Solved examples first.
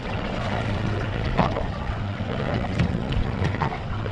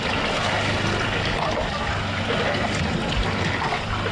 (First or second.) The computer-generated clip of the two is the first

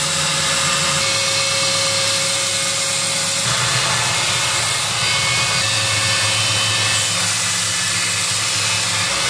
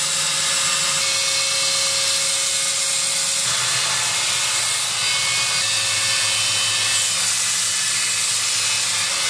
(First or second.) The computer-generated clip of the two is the first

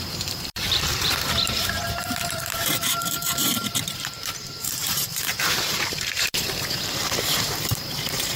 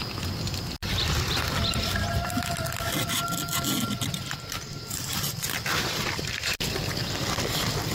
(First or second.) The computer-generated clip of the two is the first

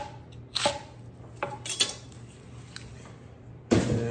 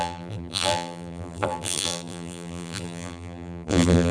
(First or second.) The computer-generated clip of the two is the second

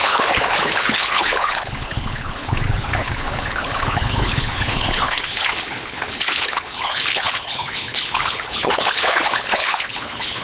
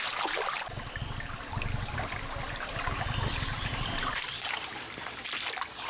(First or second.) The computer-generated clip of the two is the first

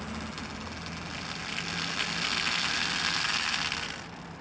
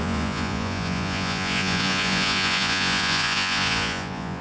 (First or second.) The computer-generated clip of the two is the second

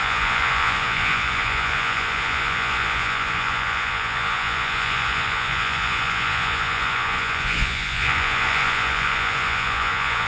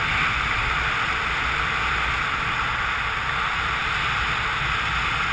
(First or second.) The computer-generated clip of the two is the first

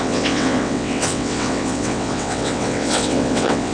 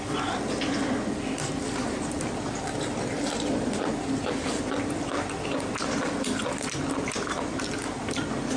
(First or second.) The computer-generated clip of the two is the first